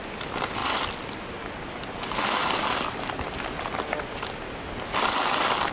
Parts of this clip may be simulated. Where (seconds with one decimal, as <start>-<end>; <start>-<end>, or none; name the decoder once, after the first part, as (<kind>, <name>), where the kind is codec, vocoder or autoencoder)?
none